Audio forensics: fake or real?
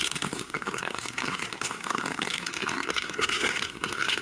fake